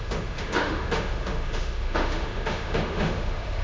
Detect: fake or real fake